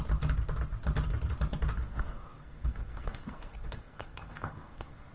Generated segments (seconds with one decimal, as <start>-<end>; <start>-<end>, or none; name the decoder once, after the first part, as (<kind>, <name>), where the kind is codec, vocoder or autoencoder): 1.8-5.1 (codec, SNAC)